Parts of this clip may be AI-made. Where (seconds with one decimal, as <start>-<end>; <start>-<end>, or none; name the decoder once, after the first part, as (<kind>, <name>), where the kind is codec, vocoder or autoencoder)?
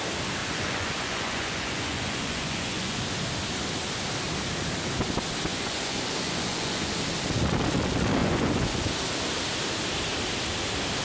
0.4-3.0 (vocoder, Vocos); 5.5-6.9; 8.2-8.9